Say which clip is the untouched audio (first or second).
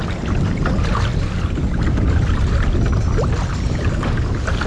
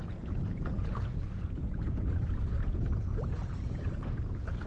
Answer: first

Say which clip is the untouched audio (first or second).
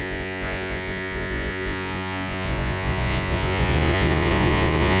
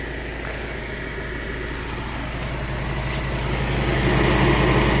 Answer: second